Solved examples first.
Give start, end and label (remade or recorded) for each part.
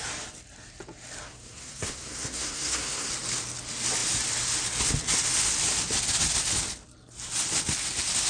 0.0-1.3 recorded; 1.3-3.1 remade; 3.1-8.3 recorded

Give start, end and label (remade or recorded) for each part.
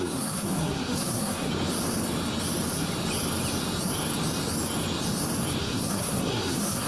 0.0-1.5 remade; 1.5-5.6 recorded; 5.6-6.9 remade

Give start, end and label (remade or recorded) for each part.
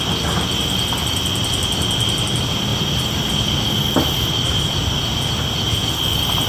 0.0-6.5 recorded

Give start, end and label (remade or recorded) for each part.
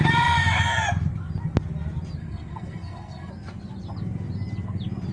0.0-2.2 recorded; 2.2-3.3 remade; 3.3-5.1 recorded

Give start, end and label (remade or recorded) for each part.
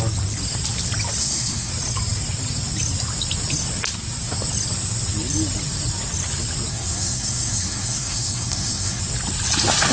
0.0-1.2 recorded; 1.2-1.7 remade; 1.7-6.7 recorded; 6.7-9.0 remade; 9.0-9.9 recorded